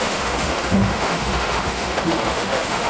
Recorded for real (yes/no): no